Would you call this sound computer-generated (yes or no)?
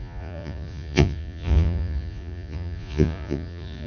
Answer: yes